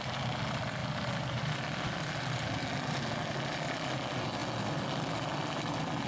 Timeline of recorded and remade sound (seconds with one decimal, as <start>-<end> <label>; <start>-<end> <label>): 0.0-6.1 recorded